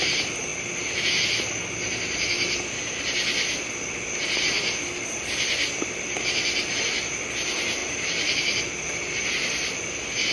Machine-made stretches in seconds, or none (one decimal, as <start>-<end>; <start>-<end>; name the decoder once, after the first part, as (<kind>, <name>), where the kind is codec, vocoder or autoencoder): 7.8-8.6 (vocoder, BigVGAN v2)

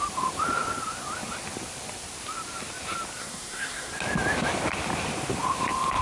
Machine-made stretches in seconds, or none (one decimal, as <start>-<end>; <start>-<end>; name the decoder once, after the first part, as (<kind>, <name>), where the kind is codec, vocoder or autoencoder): 3.2-3.9 (codec, SNAC)

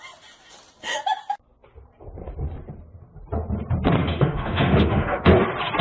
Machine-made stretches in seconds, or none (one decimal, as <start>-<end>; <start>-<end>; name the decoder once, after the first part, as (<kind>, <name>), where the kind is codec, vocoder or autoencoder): 4.0-5.3 (autoencoder, DAC-VAE)

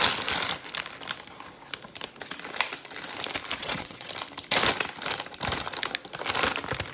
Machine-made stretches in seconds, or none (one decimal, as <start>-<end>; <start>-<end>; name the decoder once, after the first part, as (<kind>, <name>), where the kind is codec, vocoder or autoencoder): 3.6-4.1 (vocoder, WaveNeXt)